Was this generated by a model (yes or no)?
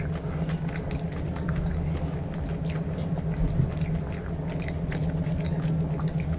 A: no